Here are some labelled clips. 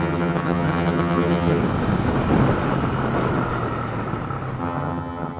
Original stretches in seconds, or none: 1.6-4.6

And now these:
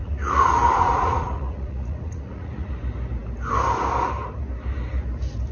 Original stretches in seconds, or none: 2.7-5.5

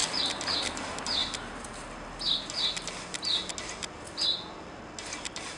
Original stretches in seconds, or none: 0.0-5.6

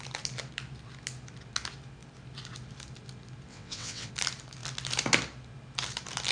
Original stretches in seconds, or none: 0.0-3.5; 4.1-6.3

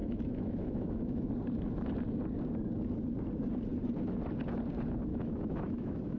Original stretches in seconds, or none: 1.3-5.1